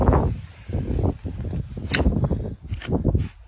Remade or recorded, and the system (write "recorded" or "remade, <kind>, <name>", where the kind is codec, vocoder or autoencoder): recorded